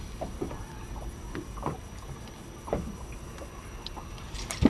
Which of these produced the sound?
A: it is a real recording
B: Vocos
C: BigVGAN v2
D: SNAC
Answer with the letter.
C